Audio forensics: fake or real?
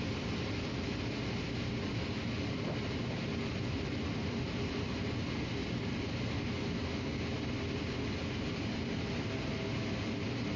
real